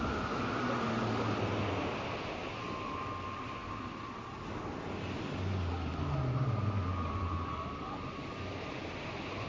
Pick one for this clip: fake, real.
real